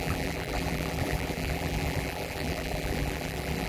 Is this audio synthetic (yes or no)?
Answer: yes